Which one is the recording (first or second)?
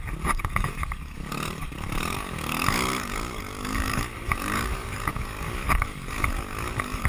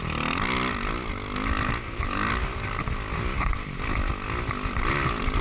second